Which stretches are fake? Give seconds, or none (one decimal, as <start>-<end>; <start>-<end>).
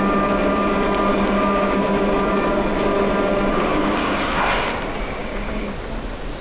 1.1-1.8; 3.7-4.4; 5.2-5.7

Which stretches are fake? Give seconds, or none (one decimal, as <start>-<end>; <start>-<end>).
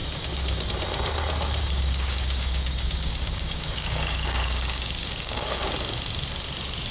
0.0-0.7; 1.6-5.7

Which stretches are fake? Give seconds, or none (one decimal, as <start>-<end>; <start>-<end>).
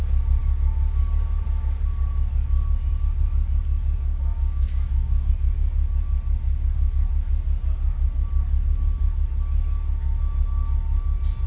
4.1-5.3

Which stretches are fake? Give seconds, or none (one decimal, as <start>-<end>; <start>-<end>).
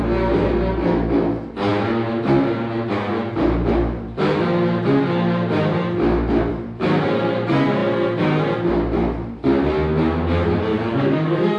10.7-11.6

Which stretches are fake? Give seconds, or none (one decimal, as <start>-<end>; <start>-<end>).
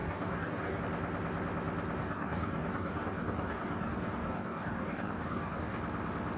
0.0-0.8; 2.0-5.8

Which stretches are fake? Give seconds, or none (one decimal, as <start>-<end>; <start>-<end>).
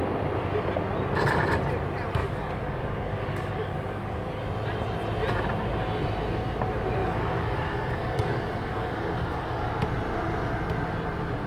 2.2-4.4; 7.0-9.7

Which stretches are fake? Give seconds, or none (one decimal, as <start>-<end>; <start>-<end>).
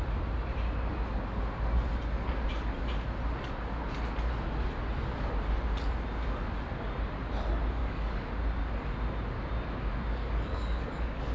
7.8-8.3; 10.1-11.3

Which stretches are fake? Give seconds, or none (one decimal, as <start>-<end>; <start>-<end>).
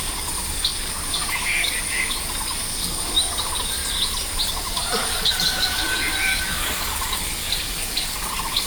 0.0-3.8; 4.5-8.7